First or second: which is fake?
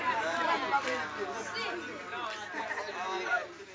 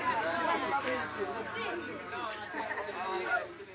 second